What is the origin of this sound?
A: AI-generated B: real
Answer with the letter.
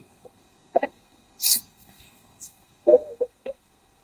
A